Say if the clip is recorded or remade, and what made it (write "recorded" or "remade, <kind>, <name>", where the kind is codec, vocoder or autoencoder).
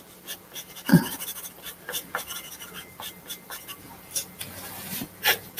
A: recorded